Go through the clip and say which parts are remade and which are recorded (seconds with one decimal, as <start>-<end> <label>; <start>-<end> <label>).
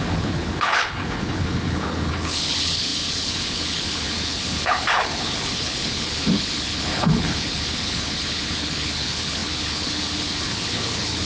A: 0.0-11.2 remade